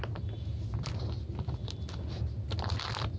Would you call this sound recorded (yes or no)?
yes